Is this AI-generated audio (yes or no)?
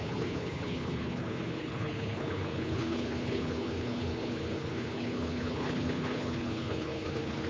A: yes